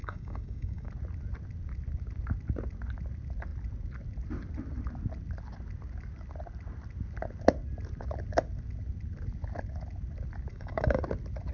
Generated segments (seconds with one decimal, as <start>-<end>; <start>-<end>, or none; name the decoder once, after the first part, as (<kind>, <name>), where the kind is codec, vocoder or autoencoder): 0.0-0.9 (codec, DAC); 10.5-11.0